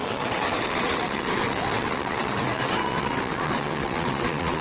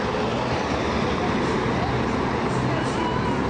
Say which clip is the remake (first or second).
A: first